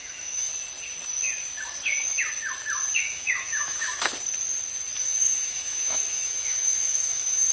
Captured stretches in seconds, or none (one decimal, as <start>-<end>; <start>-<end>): 0.5-3.0; 4.1-5.0

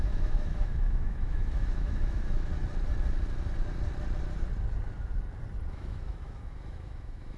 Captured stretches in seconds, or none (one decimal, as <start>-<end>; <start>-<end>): 2.5-5.7

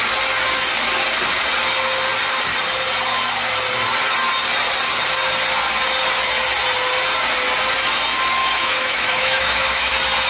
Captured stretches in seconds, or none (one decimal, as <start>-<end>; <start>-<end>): 0.0-8.4; 9.9-10.3

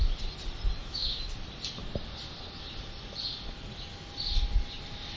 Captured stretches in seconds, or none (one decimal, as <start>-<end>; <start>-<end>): 0.0-0.8; 1.3-5.2